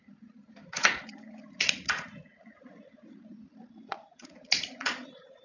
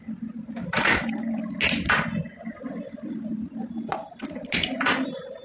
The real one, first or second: second